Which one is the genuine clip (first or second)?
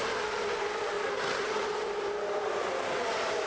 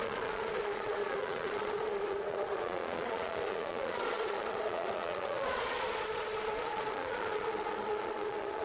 first